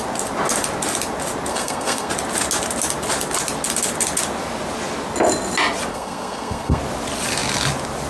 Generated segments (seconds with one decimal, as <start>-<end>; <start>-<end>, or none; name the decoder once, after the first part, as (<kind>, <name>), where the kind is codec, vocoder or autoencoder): 1.5-2.1 (codec, SNAC); 5.9-6.8